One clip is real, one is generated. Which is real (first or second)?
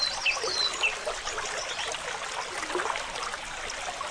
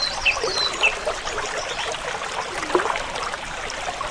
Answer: first